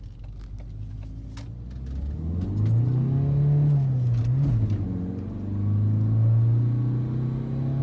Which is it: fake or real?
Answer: real